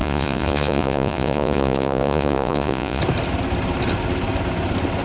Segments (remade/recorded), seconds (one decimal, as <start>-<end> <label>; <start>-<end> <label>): 0.0-3.0 remade; 3.0-5.0 recorded